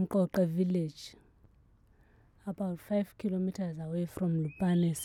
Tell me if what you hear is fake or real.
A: real